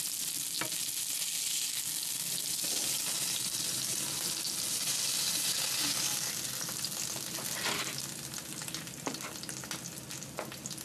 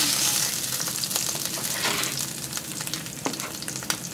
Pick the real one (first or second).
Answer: first